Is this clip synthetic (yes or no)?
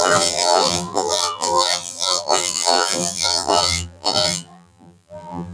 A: yes